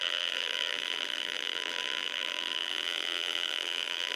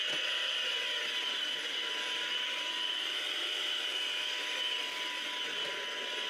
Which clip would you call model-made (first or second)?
first